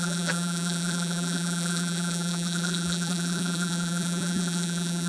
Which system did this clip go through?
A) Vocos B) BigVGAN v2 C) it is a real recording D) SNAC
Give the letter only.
B